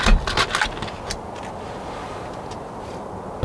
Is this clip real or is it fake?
real